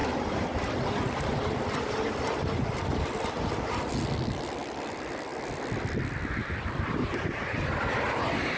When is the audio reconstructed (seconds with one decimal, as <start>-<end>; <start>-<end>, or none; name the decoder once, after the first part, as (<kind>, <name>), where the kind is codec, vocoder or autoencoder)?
none